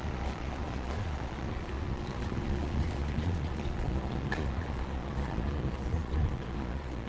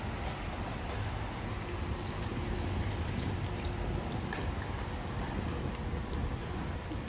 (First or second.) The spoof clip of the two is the first